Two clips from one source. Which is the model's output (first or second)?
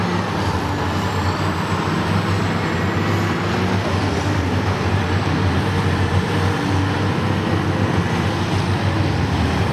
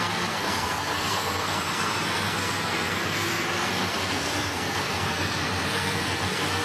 second